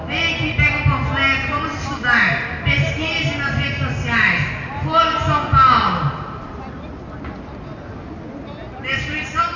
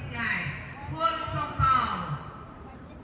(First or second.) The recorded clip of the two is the first